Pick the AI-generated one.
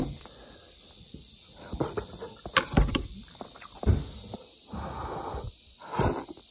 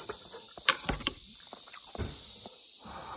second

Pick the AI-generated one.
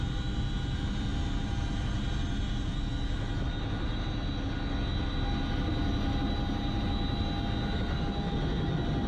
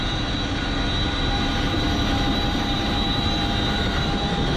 second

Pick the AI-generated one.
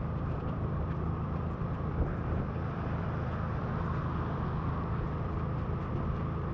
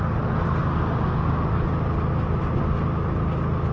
first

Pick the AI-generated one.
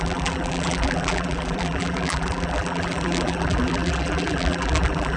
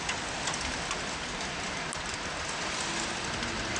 first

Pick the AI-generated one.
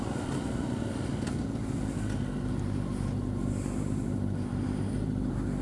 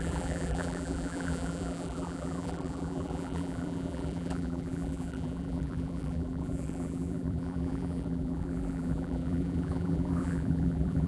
second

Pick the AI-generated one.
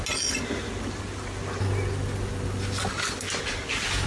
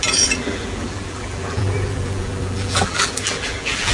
second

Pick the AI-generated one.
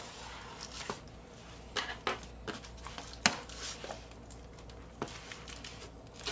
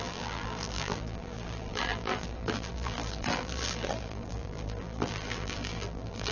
second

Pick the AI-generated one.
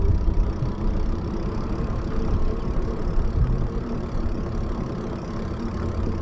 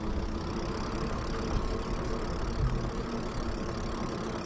first